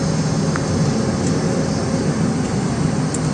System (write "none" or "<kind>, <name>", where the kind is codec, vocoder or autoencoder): none